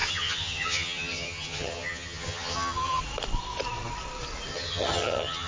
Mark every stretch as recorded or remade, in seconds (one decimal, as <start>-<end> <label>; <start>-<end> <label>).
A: 0.0-3.0 remade; 3.0-4.5 recorded; 4.5-5.5 remade